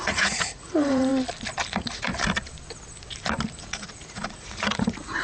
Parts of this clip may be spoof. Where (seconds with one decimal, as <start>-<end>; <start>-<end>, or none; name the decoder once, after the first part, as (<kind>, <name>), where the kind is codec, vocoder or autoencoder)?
0.0-1.1 (vocoder, Vocos); 1.7-2.1; 3.6-5.2